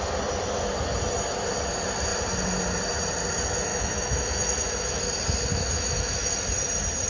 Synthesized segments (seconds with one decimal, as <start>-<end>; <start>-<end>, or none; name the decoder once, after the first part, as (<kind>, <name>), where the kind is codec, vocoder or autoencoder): 3.7-5.0 (autoencoder, DAC-VAE); 5.5-6.3